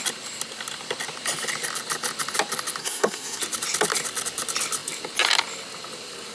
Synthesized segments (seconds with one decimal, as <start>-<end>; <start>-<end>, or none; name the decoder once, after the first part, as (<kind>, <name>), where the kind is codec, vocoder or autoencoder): 2.8-3.4 (codec, SNAC)